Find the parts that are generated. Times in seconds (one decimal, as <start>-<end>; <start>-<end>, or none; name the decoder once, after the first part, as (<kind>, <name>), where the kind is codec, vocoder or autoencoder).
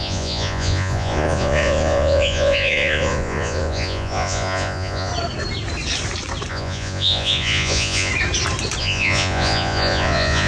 0.0-5.1 (vocoder, Vocos); 6.5-8.1; 8.8-10.5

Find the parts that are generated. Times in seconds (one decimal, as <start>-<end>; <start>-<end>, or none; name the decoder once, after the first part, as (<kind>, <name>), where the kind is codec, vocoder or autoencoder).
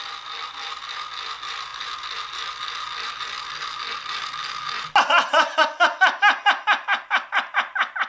none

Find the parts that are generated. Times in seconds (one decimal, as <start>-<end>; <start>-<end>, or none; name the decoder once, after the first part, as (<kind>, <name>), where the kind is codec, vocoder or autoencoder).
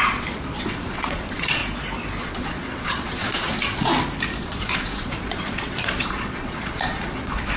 0.0-1.6 (vocoder, Vocos); 2.2-3.9; 4.4-7.6